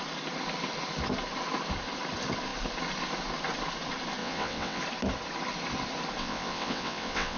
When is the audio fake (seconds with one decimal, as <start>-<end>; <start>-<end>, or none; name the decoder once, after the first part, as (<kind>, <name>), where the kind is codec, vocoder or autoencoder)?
4.2-4.8 (vocoder, WaveNeXt); 6.2-7.4

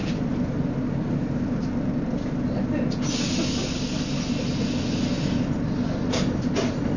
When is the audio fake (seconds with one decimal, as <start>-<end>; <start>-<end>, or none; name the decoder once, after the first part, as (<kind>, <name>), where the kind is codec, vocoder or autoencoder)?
none

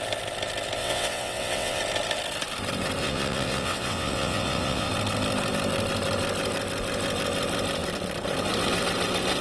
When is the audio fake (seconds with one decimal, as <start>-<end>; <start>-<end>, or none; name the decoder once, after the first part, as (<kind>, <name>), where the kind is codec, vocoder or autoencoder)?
0.8-1.8 (vocoder, WaveNeXt); 3.0-4.9

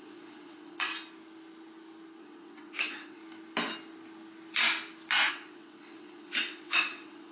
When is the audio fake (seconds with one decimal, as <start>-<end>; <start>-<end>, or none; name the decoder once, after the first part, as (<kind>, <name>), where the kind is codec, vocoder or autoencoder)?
0.0-0.9 (vocoder, WaveNeXt); 2.2-3.2; 5.3-7.3

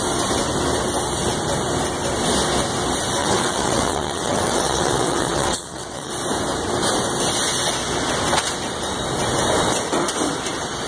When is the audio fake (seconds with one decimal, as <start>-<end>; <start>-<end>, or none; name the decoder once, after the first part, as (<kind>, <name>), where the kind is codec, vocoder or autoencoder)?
3.2-6.1 (vocoder, WaveNeXt)